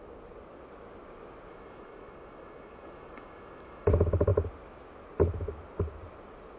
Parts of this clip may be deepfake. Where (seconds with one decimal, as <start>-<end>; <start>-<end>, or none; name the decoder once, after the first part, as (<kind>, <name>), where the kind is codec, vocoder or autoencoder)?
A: 1.5-3.9 (autoencoder, DAC-VAE)